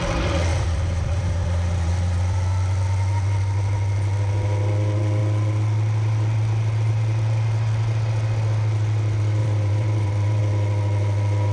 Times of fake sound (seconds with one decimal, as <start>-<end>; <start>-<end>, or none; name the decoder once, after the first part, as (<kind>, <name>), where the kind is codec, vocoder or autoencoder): 0.5-1.9 (vocoder, BigVGAN v2); 9.4-10.4